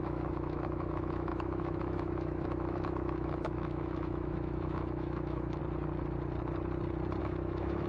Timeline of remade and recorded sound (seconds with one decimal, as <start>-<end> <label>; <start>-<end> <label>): 0.0-5.6 remade; 5.6-7.2 recorded; 7.2-7.9 remade